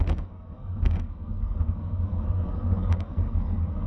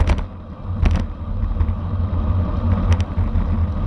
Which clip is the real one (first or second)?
second